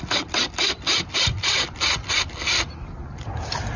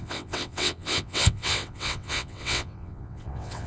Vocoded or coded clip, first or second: second